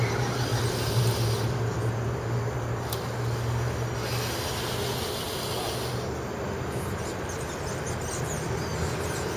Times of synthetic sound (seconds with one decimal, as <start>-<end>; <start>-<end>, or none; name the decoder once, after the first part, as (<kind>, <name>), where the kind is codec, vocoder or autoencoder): none